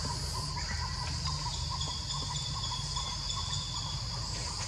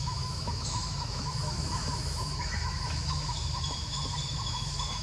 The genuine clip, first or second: first